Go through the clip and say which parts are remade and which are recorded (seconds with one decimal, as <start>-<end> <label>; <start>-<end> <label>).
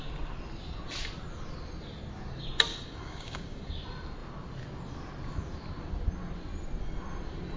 0.0-2.7 recorded; 2.7-3.7 remade; 3.7-7.6 recorded